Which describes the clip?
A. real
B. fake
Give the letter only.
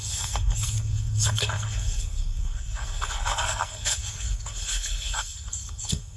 B